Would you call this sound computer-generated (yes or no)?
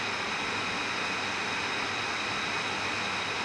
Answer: no